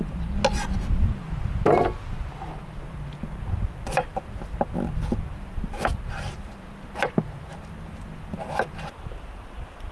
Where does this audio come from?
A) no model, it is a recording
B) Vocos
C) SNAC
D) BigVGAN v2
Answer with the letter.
A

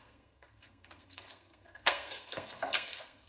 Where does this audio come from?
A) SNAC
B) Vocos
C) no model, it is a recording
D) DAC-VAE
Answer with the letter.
A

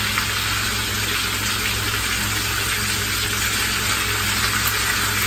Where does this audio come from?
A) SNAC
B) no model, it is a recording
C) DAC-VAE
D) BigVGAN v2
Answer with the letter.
B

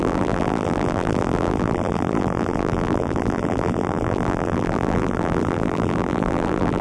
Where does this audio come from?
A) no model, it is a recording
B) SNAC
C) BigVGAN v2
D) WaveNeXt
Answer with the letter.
C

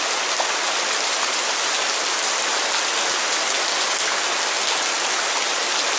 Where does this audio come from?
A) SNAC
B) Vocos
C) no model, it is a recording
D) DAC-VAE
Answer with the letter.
C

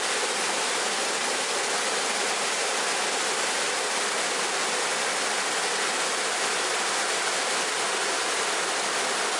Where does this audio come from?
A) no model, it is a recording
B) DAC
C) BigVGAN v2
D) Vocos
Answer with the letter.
A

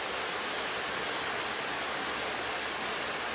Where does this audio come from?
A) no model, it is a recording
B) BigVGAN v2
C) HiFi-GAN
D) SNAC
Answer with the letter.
A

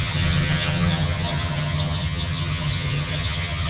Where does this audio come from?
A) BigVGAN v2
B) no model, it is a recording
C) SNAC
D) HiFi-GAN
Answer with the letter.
D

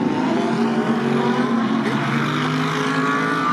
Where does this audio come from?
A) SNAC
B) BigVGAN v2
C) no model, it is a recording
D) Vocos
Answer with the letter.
C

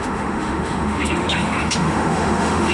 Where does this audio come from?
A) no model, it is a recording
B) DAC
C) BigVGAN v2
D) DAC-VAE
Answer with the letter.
D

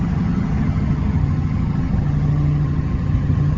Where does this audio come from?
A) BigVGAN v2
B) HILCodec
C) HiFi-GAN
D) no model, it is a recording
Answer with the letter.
C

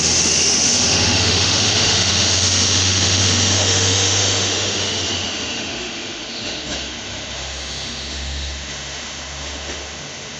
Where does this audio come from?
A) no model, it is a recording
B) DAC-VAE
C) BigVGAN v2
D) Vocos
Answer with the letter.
B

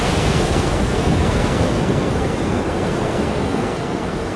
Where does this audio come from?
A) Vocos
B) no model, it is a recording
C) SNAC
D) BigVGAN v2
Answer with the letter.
C